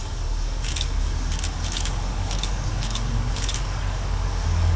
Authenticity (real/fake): fake